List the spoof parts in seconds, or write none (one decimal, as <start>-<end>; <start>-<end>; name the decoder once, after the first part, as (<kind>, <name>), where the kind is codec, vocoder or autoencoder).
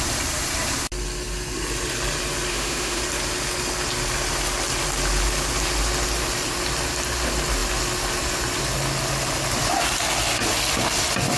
2.5-3.0 (autoencoder, DAC-VAE)